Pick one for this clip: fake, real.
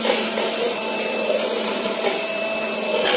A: real